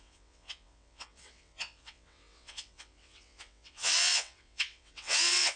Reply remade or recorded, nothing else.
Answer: remade